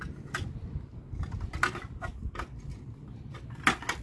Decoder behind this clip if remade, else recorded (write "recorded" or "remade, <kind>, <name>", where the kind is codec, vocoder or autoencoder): recorded